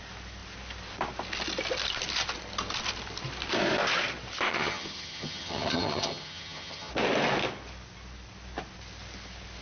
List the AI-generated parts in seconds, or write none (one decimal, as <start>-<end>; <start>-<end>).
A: 4.5-6.9